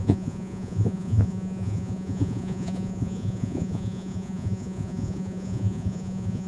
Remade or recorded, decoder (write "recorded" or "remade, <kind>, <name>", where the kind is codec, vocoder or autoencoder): remade, vocoder, Vocos